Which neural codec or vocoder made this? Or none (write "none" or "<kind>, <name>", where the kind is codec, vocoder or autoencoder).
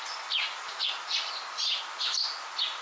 none